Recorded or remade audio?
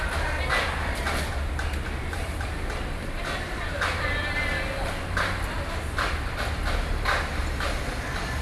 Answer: recorded